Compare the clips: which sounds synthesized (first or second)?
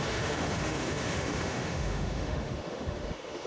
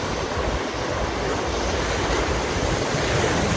first